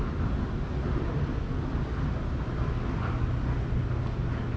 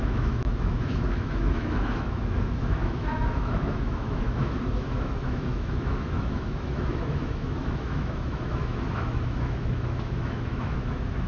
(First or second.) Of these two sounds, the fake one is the second